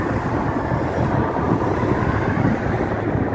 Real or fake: real